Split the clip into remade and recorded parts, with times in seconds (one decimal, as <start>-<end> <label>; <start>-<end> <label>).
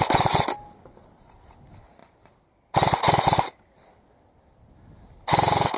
0.0-5.8 recorded